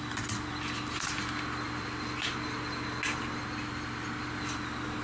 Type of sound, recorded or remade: recorded